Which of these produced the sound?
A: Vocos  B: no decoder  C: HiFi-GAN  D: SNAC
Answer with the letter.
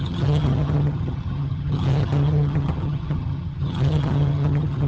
C